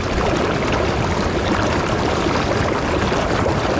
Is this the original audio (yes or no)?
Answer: no